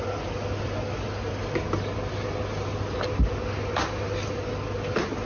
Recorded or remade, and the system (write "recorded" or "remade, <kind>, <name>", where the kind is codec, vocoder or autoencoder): recorded